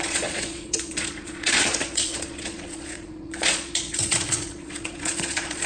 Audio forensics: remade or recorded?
remade